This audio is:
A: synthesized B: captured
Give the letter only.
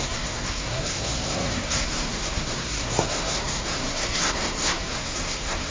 A